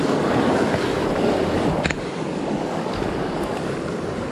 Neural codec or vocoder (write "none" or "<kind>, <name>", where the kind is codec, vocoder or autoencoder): codec, DAC